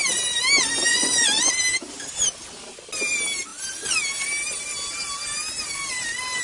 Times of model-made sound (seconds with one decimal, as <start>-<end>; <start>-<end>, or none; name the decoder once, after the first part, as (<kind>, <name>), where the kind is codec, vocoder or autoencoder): 0.9-1.5 (vocoder, Vocos)